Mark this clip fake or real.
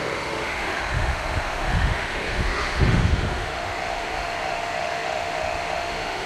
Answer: fake